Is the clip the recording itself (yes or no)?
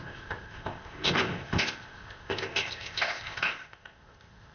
no